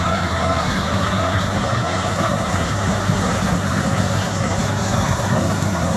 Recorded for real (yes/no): no